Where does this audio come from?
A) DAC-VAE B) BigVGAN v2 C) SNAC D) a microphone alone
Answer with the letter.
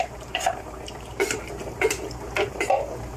B